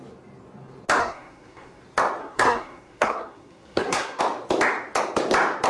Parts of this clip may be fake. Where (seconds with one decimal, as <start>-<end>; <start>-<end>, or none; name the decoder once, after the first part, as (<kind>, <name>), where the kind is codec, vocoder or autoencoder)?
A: 1.0-1.8 (codec, SNAC); 2.2-4.2